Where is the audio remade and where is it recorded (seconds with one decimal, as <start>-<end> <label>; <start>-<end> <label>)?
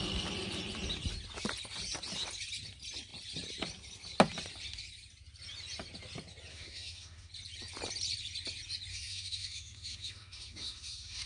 0.0-6.5 recorded; 6.5-7.3 remade; 7.3-8.9 recorded; 8.9-11.3 remade